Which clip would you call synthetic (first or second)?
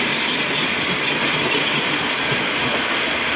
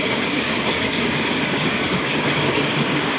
second